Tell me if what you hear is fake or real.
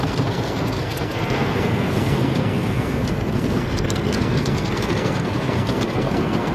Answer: fake